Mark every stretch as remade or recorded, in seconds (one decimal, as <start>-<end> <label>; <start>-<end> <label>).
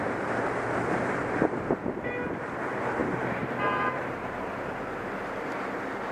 0.0-3.0 recorded; 3.0-6.1 remade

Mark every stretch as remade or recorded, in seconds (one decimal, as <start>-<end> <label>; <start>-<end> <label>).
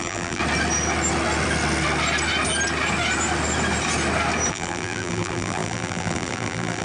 0.0-0.4 remade; 0.4-4.5 recorded; 4.5-6.8 remade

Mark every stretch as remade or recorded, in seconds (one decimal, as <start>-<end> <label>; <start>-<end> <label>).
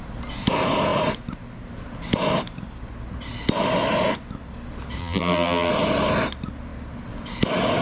0.0-5.0 recorded; 5.0-5.7 remade; 5.7-7.8 recorded